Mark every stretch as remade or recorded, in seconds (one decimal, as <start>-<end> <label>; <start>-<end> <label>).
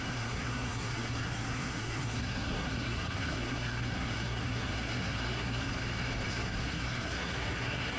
0.0-5.7 remade; 5.7-6.3 recorded; 6.3-8.0 remade